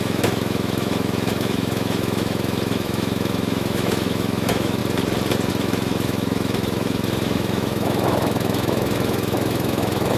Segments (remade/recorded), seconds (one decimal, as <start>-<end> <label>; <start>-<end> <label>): 0.0-4.8 remade; 4.8-5.5 recorded; 5.5-10.2 remade